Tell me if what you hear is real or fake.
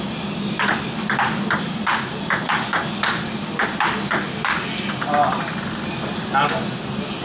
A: real